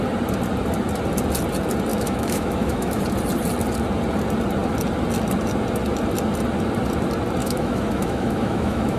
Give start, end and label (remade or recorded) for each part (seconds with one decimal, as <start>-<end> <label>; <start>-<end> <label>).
0.0-1.9 recorded; 1.9-3.0 remade; 3.0-7.4 recorded; 7.4-9.0 remade